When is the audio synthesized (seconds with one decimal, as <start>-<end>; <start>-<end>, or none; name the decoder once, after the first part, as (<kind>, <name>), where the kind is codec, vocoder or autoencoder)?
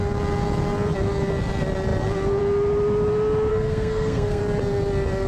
3.5-4.4 (codec, SNAC)